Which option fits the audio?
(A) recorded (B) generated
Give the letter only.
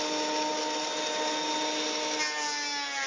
A